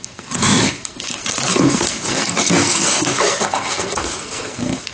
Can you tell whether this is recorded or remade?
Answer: remade